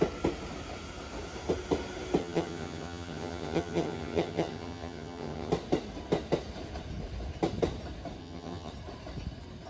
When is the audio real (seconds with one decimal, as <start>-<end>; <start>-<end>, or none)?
0.0-2.2; 5.5-8.2; 8.7-9.7